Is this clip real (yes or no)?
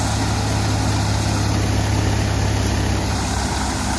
yes